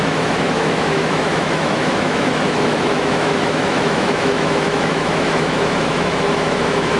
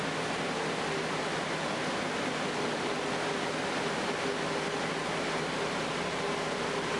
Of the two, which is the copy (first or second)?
first